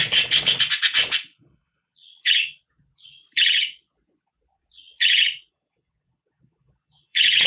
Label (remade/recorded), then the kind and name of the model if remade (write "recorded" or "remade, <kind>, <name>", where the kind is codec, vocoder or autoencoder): remade, vocoder, Vocos